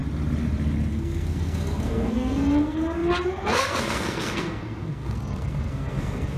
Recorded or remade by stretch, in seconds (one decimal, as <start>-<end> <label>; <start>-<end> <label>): 0.0-0.9 recorded; 0.9-6.4 remade